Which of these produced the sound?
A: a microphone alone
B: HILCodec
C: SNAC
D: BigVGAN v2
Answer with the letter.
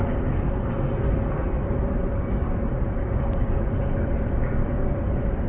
A